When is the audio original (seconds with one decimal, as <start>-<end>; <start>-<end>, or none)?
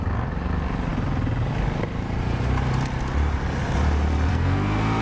0.0-4.3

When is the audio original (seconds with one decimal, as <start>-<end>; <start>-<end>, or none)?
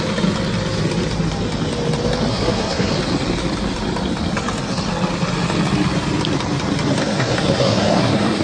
0.0-2.3; 2.9-7.0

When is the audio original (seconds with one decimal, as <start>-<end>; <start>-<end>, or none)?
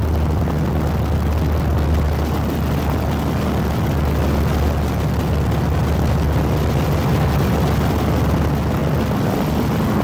0.0-10.0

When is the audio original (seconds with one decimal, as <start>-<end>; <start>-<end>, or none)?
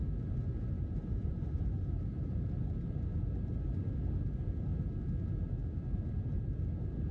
0.0-0.8; 3.1-7.1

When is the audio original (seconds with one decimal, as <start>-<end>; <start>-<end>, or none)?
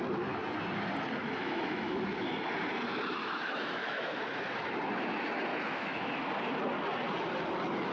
0.0-1.2; 2.0-3.2; 4.2-5.5; 6.3-7.9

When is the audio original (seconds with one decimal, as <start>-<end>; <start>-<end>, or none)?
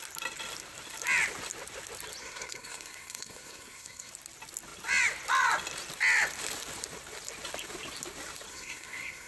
0.0-2.2; 4.1-8.5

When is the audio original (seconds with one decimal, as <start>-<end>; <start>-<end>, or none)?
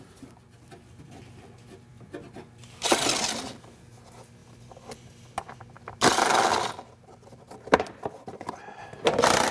0.0-4.4; 8.6-9.5